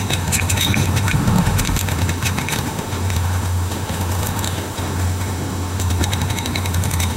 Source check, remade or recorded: remade